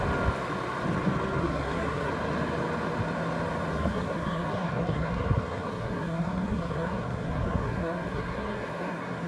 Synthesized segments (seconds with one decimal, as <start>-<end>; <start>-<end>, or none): 1.4-2.1; 3.7-9.3